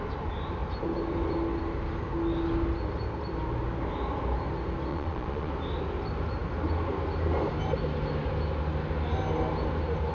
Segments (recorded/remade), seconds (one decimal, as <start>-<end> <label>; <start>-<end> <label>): 0.0-4.9 recorded; 4.9-5.5 remade; 5.5-10.1 recorded